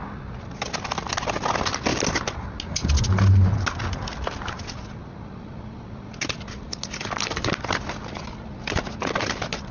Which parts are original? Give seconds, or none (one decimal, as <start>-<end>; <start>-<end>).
0.0-9.7

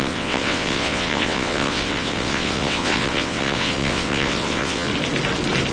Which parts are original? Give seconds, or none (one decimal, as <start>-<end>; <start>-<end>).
4.9-5.7

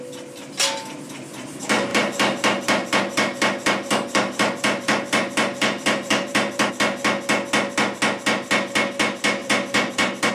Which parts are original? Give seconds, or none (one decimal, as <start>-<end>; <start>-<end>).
0.0-1.9; 6.7-9.4